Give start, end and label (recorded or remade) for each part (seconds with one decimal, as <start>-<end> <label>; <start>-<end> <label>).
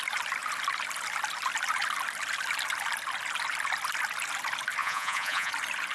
0.0-4.8 recorded; 4.8-5.5 remade; 5.5-5.9 recorded